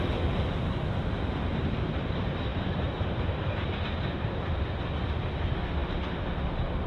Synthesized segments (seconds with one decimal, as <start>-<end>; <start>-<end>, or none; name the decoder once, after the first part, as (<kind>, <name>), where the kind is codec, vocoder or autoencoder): 2.5-4.6 (vocoder, BigVGAN v2)